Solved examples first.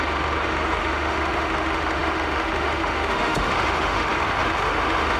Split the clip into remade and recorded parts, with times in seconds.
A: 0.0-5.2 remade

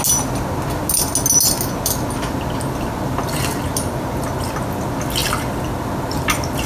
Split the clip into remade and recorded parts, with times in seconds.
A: 0.0-6.7 recorded

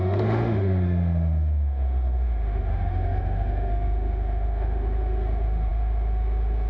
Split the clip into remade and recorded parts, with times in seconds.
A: 0.0-6.7 remade

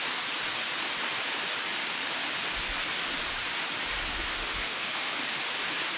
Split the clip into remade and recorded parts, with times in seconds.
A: 0.0-4.1 recorded; 4.1-5.1 remade; 5.1-6.0 recorded

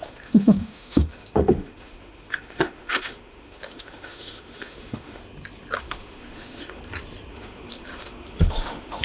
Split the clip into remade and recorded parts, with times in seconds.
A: 0.0-5.2 remade; 5.2-5.8 recorded; 5.8-6.8 remade; 6.8-7.3 recorded; 7.3-9.0 remade

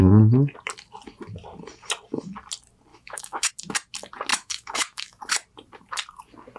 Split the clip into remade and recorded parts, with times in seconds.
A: 0.0-2.9 recorded; 2.9-3.5 remade; 3.5-4.3 recorded; 4.3-5.2 remade; 5.2-6.6 recorded

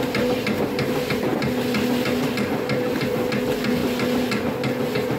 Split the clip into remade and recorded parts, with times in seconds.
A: 0.0-5.2 recorded

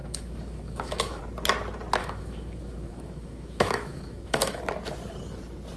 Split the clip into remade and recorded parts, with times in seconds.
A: 0.0-1.2 remade; 1.2-2.0 recorded; 2.0-4.6 remade; 4.6-5.8 recorded